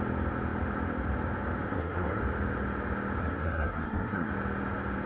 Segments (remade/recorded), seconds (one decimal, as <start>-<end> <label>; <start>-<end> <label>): 0.0-1.7 recorded; 1.7-2.2 remade; 2.2-3.2 recorded; 3.2-4.3 remade; 4.3-5.1 recorded